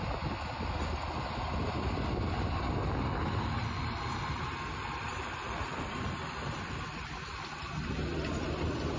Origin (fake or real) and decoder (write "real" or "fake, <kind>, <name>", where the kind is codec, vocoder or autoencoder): real